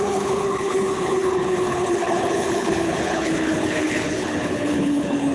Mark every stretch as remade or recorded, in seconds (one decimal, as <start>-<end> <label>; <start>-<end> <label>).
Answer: 0.0-5.3 remade